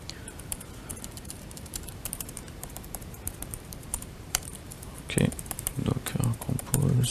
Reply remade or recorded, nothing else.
remade